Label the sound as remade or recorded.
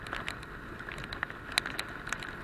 recorded